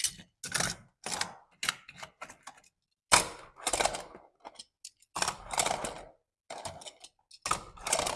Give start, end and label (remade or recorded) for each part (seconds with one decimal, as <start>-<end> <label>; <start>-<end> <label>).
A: 0.0-8.2 recorded